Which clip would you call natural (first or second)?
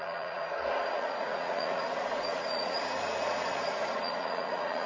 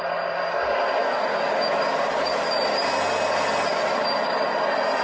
second